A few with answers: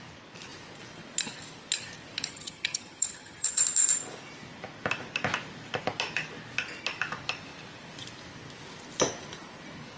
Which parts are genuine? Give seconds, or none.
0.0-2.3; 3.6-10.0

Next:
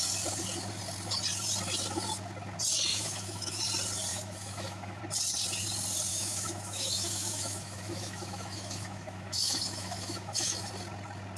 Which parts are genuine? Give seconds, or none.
0.0-2.9; 3.6-4.1; 5.0-6.1; 10.7-11.4

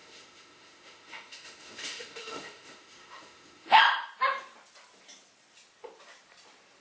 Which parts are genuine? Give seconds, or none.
3.8-6.8

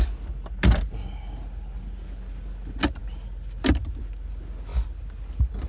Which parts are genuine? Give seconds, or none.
0.0-5.7

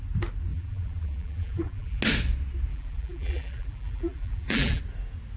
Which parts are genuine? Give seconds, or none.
0.0-0.5; 2.0-2.7; 4.8-5.4

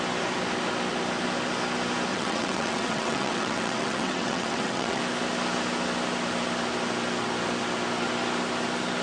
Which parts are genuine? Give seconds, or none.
0.0-2.1; 5.0-9.0

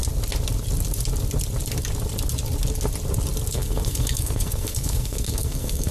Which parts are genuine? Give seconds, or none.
0.0-3.5